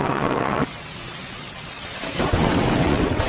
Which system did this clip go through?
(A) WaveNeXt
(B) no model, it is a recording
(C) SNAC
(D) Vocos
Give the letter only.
A